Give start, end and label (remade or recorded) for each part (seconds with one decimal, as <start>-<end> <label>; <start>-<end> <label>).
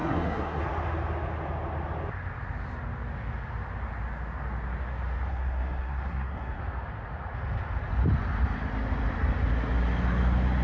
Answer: 0.0-0.6 remade; 0.6-5.3 recorded; 5.3-6.6 remade; 6.6-10.6 recorded